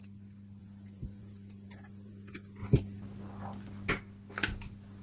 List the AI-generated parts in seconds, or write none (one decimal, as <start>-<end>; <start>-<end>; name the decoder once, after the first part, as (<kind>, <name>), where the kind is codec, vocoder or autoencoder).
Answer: 0.6-2.1 (vocoder, Vocos)